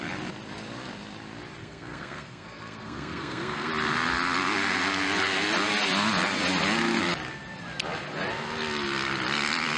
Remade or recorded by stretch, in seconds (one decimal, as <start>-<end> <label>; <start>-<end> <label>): 0.0-1.6 recorded; 1.6-3.7 remade; 3.7-9.8 recorded